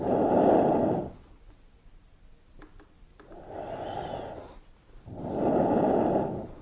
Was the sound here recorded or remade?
recorded